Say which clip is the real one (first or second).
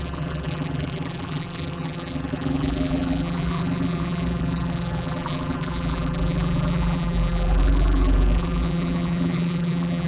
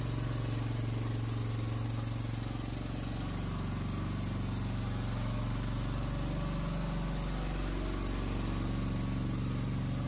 second